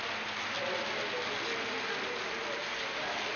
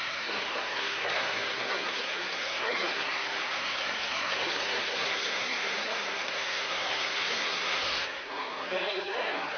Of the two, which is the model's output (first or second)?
second